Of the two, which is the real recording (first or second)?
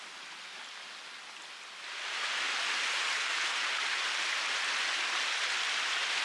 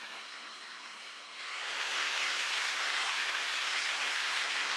first